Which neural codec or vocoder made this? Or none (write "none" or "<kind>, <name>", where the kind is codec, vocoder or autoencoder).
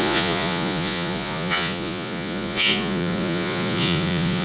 vocoder, Vocos